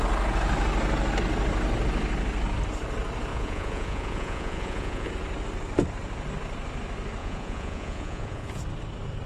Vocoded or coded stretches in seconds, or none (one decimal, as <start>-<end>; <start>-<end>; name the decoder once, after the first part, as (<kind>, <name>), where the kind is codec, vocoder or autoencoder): 3.3-5.1 (vocoder, Vocos); 7.2-8.6